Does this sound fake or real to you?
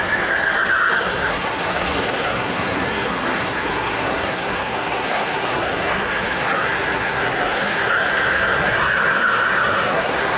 fake